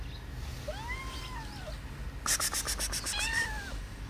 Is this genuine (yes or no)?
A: yes